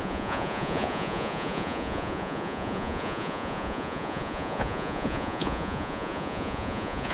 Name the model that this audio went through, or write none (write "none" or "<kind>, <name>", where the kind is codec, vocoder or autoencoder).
vocoder, Vocos